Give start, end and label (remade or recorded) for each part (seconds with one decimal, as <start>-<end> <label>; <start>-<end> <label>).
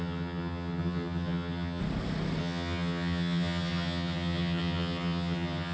0.0-1.8 remade; 1.8-2.4 recorded; 2.4-5.7 remade